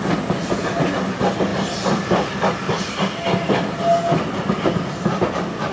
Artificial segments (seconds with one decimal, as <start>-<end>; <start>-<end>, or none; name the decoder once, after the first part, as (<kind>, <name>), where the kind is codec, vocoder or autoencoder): none